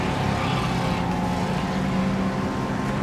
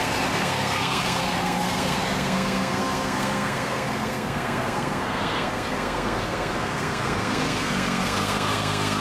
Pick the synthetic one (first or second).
second